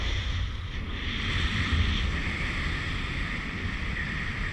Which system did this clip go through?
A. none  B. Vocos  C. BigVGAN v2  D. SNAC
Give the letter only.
A